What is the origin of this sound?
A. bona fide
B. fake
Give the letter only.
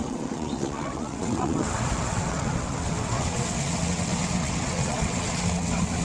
B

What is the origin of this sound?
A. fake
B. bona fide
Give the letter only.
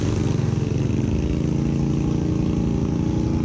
B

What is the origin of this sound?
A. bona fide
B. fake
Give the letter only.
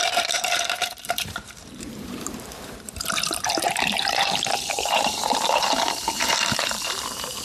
B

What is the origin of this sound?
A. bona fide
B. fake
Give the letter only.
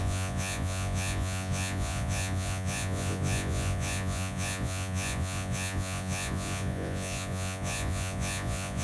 B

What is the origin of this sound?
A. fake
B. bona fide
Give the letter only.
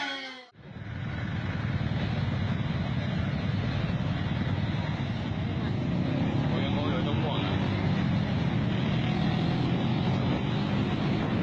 B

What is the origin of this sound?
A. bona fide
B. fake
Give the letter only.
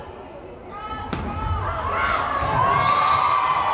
A